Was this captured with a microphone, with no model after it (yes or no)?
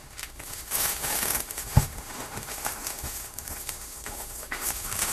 no